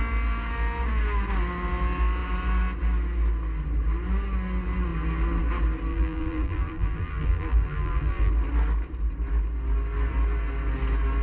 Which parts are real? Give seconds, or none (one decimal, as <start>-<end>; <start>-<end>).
0.0-5.9; 8.3-11.2